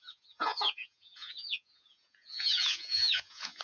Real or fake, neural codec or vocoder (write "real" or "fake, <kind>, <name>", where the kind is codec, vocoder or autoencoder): fake, vocoder, Vocos